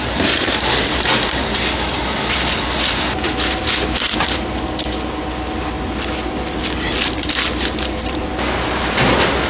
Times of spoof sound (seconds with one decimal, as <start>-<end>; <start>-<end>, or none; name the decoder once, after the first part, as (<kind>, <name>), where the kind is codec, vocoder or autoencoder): none